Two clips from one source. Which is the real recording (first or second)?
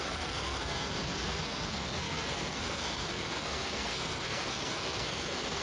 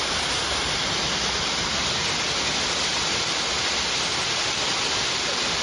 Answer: second